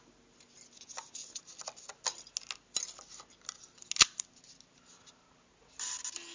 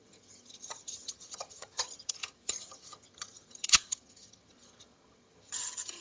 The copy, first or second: second